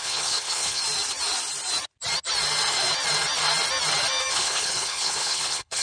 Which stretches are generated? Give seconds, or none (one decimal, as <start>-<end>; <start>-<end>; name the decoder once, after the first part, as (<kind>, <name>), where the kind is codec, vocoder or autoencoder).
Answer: 0.0-0.8 (codec, HILCodec); 4.3-5.8